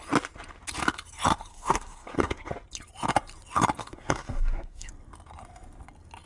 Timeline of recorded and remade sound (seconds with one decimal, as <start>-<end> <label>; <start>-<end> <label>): 0.0-1.5 recorded; 1.5-2.5 remade; 2.5-3.8 recorded; 3.8-4.9 remade; 4.9-6.3 recorded